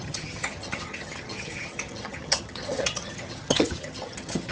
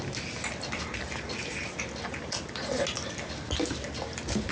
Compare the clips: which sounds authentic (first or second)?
second